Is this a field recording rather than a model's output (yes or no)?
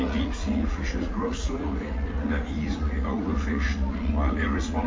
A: no